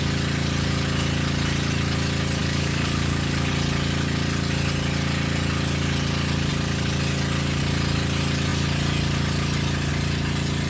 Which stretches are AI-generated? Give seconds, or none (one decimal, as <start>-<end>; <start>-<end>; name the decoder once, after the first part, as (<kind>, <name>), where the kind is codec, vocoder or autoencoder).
2.4-3.5 (codec, DAC)

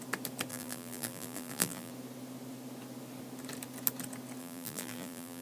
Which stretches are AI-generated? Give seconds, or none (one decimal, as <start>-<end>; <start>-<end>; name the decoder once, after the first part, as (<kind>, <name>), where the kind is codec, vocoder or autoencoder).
0.5-1.9 (vocoder, BigVGAN v2); 4.4-5.4

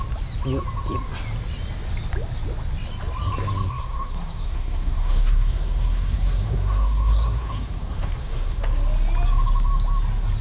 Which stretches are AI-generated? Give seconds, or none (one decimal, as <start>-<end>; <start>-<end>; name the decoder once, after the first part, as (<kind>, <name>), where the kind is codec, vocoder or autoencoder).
3.7-8.6 (codec, SNAC)